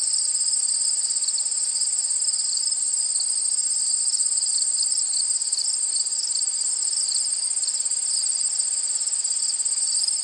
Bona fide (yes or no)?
yes